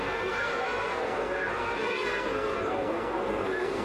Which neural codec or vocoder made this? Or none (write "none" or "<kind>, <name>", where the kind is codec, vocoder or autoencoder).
codec, SNAC